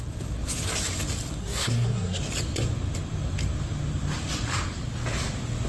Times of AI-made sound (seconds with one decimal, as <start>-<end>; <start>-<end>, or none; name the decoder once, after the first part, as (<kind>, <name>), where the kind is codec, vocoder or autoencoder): 1.4-2.2 (codec, SNAC)